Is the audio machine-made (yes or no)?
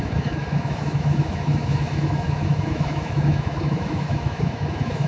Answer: yes